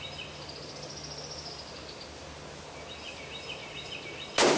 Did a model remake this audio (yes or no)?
no